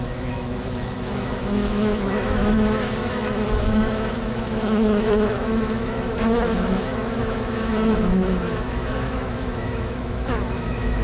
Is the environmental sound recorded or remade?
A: remade